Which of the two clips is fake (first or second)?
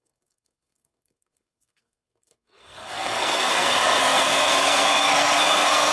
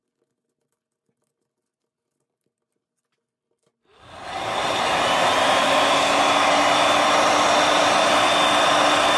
first